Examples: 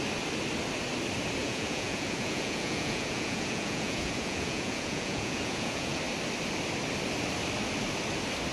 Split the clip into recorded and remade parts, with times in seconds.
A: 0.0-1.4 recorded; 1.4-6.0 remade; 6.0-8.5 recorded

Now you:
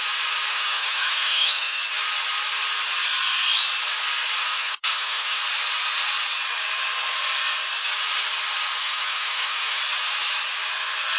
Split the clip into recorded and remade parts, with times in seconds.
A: 0.0-0.5 recorded; 0.5-1.8 remade; 1.8-4.4 recorded; 4.4-5.4 remade; 5.4-8.8 recorded; 8.8-9.8 remade; 9.8-11.2 recorded

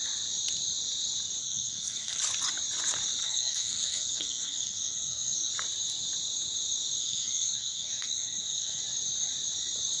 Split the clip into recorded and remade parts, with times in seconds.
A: 0.0-1.4 recorded; 1.4-2.2 remade; 2.2-3.2 recorded; 3.2-5.5 remade; 5.5-7.0 recorded; 7.0-8.8 remade; 8.8-10.0 recorded

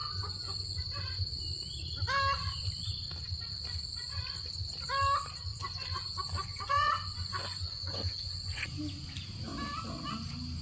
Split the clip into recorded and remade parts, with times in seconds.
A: 0.0-1.3 remade; 1.3-5.5 recorded; 5.5-8.8 remade; 8.8-10.6 recorded

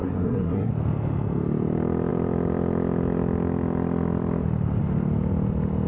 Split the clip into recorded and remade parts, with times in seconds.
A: 0.0-0.7 remade; 0.7-5.9 recorded

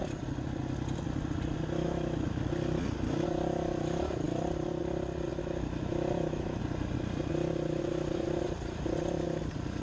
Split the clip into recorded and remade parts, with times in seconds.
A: 0.0-1.8 recorded; 1.8-2.5 remade; 2.5-5.3 recorded; 5.3-6.6 remade; 6.6-9.8 recorded

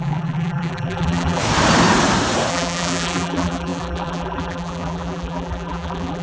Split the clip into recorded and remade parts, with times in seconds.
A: 0.0-1.4 remade; 1.4-2.5 recorded; 2.5-6.2 remade